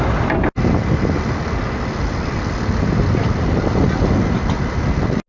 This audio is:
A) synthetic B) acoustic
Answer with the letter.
B